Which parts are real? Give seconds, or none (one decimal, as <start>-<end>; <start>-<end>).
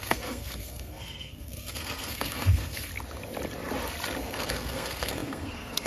2.9-4.2